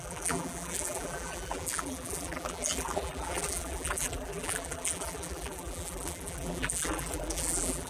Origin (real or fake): fake